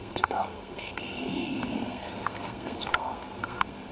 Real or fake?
fake